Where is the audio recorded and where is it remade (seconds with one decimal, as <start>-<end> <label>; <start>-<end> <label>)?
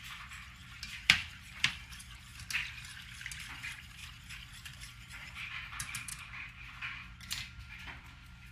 0.0-2.3 remade; 2.3-3.5 recorded; 3.5-4.0 remade; 4.0-4.5 recorded; 4.5-6.1 remade; 6.1-7.8 recorded; 7.8-8.5 remade